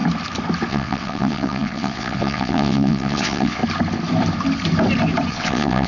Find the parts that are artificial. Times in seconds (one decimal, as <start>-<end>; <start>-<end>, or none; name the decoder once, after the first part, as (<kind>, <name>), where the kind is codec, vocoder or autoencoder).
0.7-3.6 (vocoder, WaveNeXt); 5.3-5.9